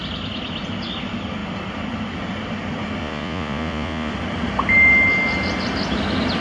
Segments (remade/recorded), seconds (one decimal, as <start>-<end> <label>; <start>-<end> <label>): 0.0-3.0 recorded; 3.0-4.1 remade; 4.1-6.4 recorded